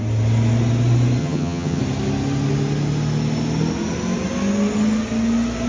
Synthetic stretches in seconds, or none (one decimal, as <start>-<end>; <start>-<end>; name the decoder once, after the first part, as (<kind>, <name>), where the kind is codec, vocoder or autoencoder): 1.2-1.8 (vocoder, HiFi-GAN)